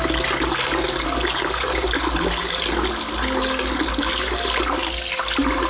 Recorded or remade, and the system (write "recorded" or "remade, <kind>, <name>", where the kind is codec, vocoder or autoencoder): recorded